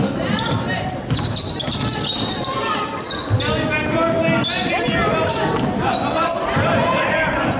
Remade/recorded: recorded